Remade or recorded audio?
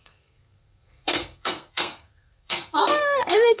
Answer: remade